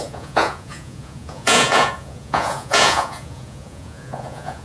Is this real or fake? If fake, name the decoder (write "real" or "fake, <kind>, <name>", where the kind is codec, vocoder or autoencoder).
fake, vocoder, Vocos